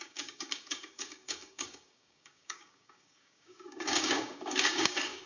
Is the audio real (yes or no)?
no